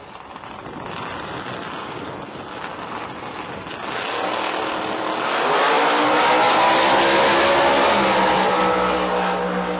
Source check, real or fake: real